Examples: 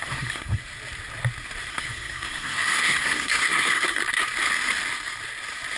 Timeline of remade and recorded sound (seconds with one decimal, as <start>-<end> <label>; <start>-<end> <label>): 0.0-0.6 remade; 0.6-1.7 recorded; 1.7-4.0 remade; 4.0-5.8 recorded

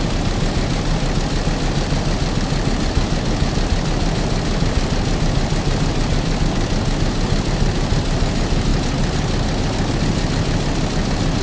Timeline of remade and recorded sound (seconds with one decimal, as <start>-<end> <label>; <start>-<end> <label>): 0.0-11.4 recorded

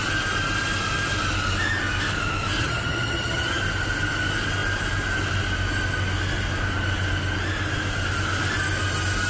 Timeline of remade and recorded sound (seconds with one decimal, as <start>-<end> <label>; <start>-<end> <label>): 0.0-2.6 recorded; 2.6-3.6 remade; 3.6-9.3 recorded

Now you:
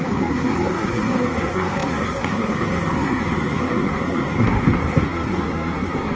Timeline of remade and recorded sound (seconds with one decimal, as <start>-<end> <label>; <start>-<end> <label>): 0.0-6.2 remade

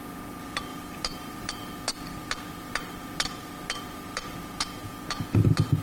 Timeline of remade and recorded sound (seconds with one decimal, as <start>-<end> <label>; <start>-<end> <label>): 0.0-0.7 recorded; 0.7-1.5 remade; 1.5-5.8 recorded